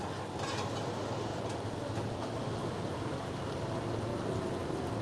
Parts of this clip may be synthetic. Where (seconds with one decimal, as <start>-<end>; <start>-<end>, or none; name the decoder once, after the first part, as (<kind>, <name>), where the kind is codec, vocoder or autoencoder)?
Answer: none